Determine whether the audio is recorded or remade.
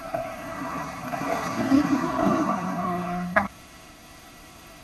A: remade